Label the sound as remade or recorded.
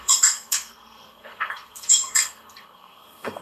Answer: remade